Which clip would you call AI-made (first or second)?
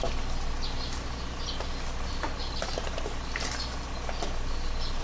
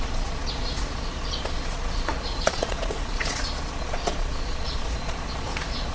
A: second